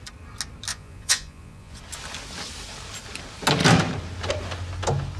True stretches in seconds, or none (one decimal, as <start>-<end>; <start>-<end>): 0.0-0.7; 1.8-5.2